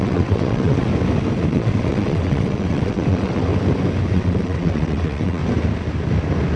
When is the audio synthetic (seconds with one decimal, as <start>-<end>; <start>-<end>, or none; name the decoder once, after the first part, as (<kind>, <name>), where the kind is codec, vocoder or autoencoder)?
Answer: 0.0-0.9 (vocoder, WaveNeXt); 1.5-3.5; 4.1-5.4